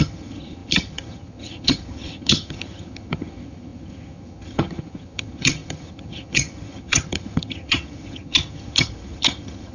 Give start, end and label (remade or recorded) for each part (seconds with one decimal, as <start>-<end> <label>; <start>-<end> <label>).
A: 0.0-9.7 remade